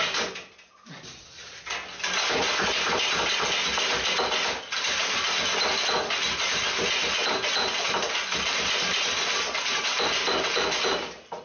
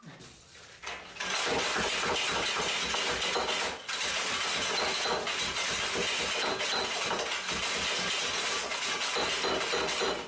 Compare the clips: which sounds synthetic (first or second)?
first